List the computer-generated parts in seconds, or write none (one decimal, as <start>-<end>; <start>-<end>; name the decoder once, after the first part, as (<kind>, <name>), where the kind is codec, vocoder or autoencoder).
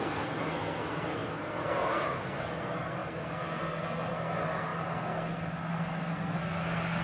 0.0-7.0 (codec, SNAC)